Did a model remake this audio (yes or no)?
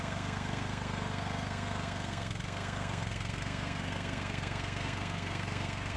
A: yes